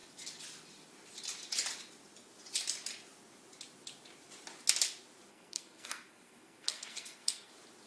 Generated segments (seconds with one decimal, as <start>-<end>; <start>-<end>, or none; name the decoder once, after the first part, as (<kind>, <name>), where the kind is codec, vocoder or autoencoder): 5.3-7.5 (codec, SNAC)